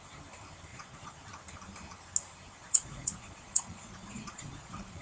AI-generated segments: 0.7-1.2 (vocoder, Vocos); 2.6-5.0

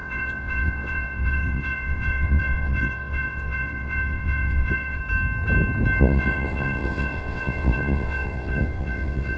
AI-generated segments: 0.0-5.0 (vocoder, WaveNeXt); 6.0-9.4

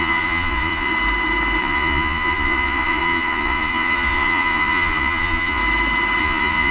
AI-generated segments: 0.0-0.9 (vocoder, Vocos); 1.6-5.6; 6.2-6.7

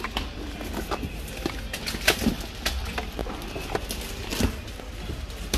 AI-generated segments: none

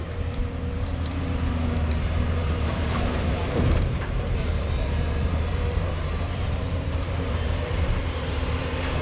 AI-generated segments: 0.0-9.0 (vocoder, BigVGAN v2)